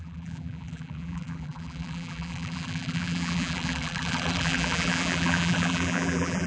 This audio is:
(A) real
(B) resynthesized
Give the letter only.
B